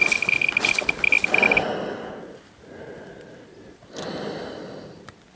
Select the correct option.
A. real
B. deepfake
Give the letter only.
A